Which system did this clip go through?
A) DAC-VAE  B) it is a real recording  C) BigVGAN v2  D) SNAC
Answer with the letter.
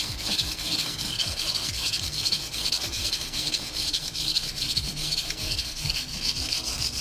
D